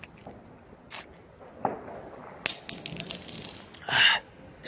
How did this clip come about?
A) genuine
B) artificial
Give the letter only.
A